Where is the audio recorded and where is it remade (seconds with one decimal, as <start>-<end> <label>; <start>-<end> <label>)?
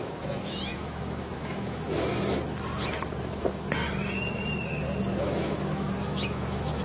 0.0-2.1 remade; 2.1-3.2 recorded; 3.2-3.8 remade; 3.8-5.2 recorded; 5.2-6.8 remade